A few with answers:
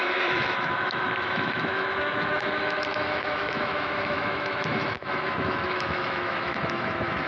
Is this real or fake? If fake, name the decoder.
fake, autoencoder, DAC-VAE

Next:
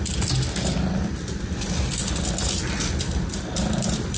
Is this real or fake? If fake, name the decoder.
real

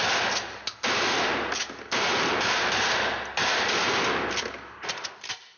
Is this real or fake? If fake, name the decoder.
real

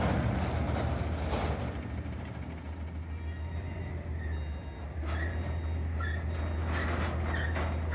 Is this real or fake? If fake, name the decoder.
real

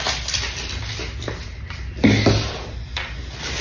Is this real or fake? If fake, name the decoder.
real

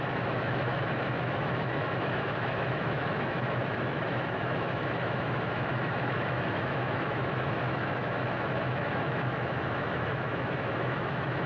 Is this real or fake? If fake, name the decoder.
fake, autoencoder, DAC-VAE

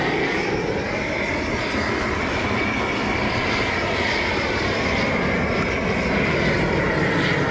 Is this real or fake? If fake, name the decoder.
real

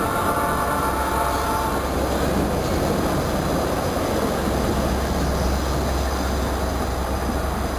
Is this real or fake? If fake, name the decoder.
real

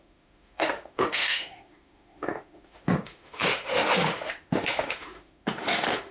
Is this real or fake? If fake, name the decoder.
fake, autoencoder, DAC-VAE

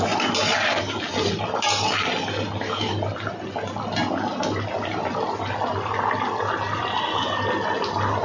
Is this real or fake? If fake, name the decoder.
real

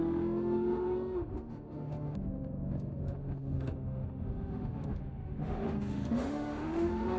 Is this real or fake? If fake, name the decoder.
fake, autoencoder, DAC-VAE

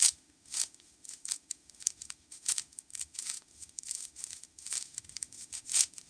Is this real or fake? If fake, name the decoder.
fake, autoencoder, DAC-VAE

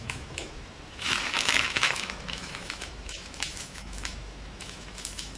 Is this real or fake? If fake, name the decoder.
fake, autoencoder, DAC-VAE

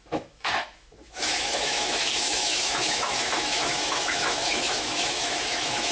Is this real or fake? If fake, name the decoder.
fake, autoencoder, DAC-VAE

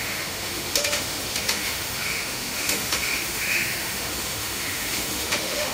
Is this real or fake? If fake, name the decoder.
fake, autoencoder, DAC-VAE